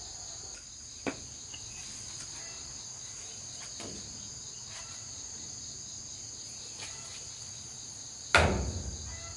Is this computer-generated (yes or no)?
no